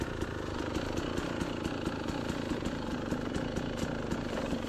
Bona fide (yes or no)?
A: yes